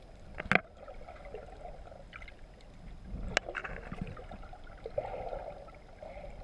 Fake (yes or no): no